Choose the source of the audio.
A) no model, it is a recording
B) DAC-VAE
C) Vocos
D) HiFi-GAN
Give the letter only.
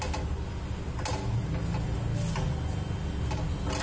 A